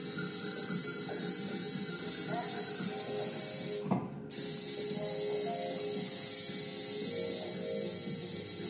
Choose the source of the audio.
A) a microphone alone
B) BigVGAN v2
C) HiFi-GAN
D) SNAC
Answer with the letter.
A